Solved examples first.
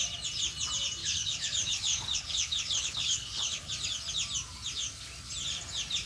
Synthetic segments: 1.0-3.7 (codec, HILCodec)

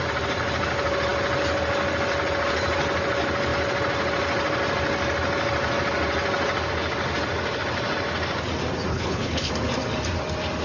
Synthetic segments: 8.9-9.5 (codec, HILCodec)

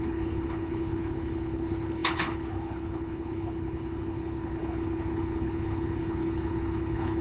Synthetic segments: 0.0-7.2 (codec, HILCodec)

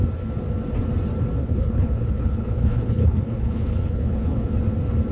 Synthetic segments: 1.4-4.5 (codec, HILCodec)